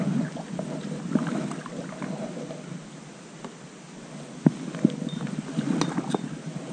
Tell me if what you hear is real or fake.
real